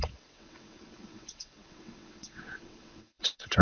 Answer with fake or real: fake